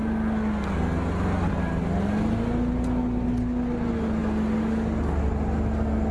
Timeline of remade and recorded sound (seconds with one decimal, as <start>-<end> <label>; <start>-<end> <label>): 0.0-6.1 recorded